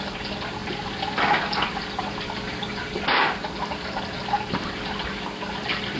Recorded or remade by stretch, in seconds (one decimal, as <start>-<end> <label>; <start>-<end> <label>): 0.0-6.0 recorded